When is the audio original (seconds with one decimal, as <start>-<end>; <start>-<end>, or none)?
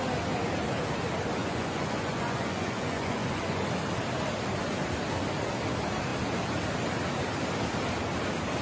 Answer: 0.0-1.4; 3.6-8.6